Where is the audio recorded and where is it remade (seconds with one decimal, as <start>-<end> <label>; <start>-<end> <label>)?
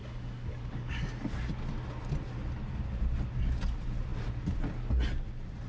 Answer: 0.0-1.0 remade; 1.0-5.7 recorded